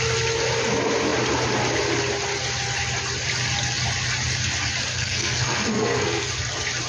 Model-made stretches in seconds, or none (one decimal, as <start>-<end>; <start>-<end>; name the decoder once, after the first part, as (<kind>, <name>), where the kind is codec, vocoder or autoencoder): 4.9-6.3 (codec, SNAC)